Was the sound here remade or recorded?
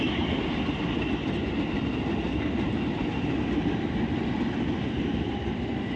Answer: recorded